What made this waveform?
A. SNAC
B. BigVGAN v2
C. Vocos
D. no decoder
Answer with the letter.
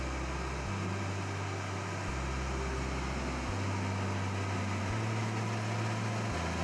D